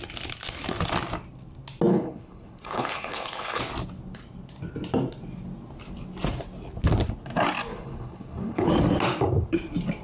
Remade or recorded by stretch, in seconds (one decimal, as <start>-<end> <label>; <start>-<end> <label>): 0.0-1.9 recorded; 1.9-3.6 remade; 3.6-7.7 recorded; 7.7-8.7 remade; 8.7-10.0 recorded